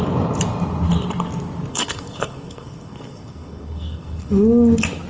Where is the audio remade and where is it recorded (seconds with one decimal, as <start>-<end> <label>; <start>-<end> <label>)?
0.0-1.7 recorded; 1.7-4.3 remade; 4.3-5.1 recorded